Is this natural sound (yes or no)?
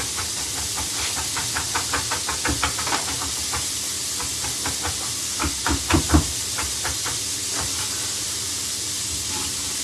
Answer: yes